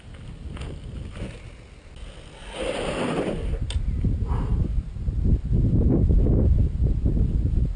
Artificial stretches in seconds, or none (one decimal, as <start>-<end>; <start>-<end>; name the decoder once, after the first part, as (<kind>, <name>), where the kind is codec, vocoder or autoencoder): none